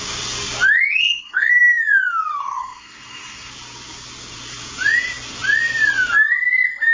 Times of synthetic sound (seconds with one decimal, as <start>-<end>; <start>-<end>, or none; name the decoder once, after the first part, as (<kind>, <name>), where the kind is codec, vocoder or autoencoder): 1.0-1.5 (codec, SNAC); 2.4-3.5